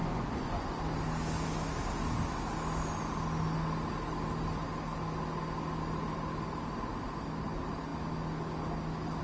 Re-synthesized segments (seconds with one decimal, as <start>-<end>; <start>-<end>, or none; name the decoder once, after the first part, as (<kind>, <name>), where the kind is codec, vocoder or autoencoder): 0.0-0.8 (vocoder, Vocos)